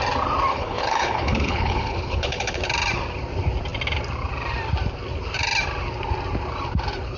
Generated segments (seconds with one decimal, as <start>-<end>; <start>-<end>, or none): 0.5-2.6